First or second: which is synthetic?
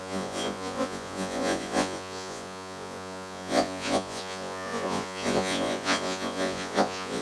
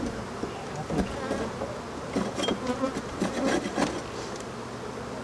first